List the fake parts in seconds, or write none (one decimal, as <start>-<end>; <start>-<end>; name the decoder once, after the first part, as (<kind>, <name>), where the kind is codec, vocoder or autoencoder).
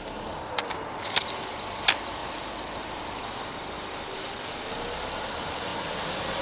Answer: 2.2-3.4 (vocoder, BigVGAN v2)